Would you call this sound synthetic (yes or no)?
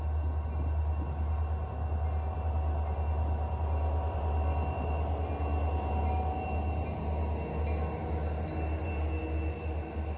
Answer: no